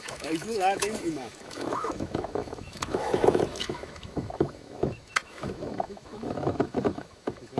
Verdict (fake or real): fake